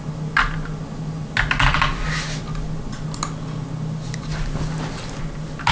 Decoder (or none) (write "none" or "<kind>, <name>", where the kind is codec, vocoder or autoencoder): none